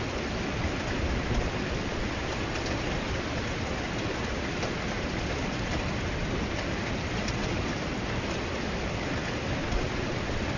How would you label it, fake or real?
real